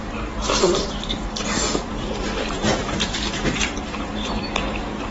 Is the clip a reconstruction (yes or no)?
yes